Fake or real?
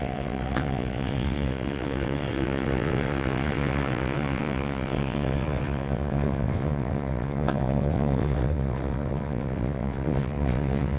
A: fake